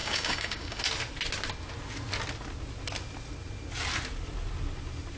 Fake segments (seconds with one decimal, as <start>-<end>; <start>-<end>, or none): 0.0-0.8

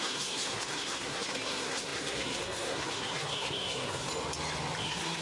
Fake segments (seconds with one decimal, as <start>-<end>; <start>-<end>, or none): 0.0-4.1; 4.8-5.2

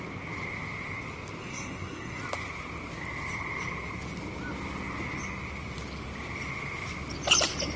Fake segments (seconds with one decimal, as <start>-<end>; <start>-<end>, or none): 1.4-2.2

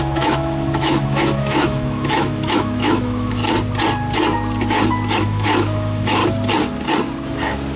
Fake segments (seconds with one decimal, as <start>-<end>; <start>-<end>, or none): 0.0-3.4; 5.2-6.2

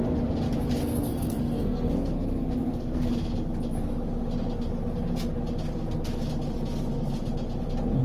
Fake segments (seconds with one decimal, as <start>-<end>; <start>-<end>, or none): 0.8-3.1

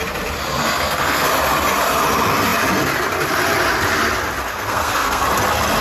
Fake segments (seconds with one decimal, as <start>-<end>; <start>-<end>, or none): 0.6-1.3; 4.5-5.2

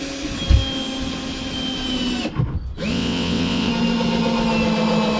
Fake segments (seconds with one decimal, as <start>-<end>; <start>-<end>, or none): 2.9-3.7